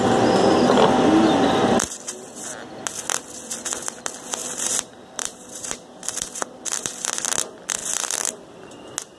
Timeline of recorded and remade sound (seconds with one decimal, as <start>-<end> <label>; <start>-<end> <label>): 0.0-4.4 recorded; 4.4-7.1 remade; 7.1-7.8 recorded; 7.8-8.5 remade; 8.5-9.2 recorded